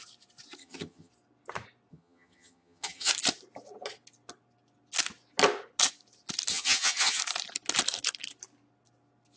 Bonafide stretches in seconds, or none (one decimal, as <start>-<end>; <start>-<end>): 0.0-0.6; 1.1-1.9; 3.1-6.5; 7.2-9.4